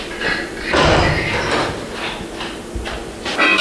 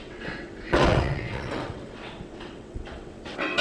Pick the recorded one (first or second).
first